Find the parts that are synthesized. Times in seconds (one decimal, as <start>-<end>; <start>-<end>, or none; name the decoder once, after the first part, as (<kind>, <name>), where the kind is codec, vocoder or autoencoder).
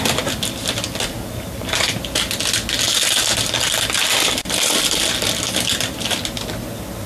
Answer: none